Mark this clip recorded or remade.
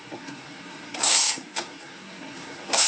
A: remade